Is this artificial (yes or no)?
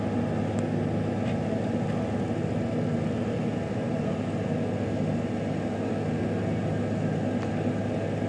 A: no